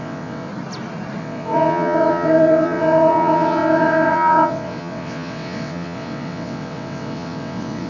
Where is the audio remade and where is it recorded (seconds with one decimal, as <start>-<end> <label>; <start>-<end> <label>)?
0.0-0.5 remade; 0.5-1.2 recorded; 1.2-7.9 remade